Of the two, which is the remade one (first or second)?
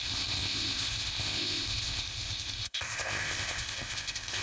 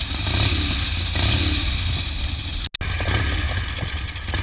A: first